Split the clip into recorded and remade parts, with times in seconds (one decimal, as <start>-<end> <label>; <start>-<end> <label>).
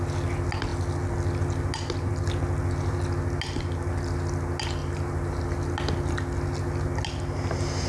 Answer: 0.0-4.8 recorded; 4.8-5.4 remade; 5.4-7.9 recorded